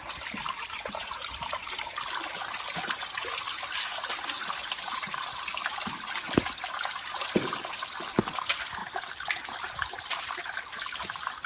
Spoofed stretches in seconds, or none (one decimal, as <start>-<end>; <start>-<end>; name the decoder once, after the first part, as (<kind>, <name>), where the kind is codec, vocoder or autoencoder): none